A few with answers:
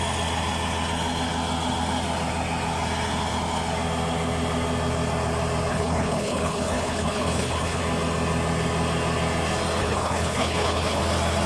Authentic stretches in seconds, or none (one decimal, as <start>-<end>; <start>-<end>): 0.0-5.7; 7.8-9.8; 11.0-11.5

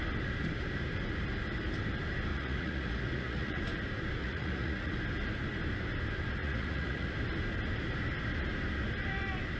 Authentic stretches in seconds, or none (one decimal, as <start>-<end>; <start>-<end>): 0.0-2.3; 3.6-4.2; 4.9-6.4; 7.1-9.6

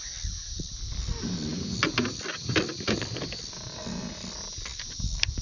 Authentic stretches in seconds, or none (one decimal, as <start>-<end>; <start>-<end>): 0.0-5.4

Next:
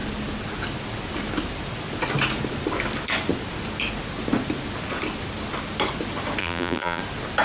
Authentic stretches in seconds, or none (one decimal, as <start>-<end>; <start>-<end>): 0.0-6.4; 7.0-7.4

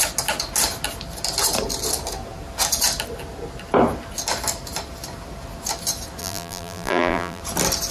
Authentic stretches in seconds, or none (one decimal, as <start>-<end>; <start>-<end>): 0.0-6.2; 7.4-7.9